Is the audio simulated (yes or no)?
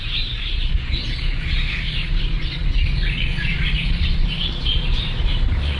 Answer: yes